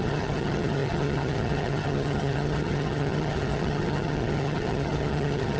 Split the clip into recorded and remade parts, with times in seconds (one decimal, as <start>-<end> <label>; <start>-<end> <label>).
0.0-5.6 remade